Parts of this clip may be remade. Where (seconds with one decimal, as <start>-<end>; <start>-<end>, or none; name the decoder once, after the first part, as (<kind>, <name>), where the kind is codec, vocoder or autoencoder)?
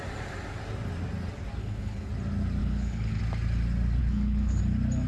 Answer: 1.6-2.1 (codec, HILCodec); 2.6-3.2; 4.0-4.6